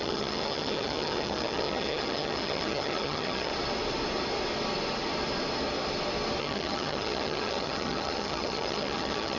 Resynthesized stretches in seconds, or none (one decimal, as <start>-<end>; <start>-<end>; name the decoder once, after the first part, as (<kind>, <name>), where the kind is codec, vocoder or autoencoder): 0.0-3.5 (vocoder, HiFi-GAN); 6.4-9.4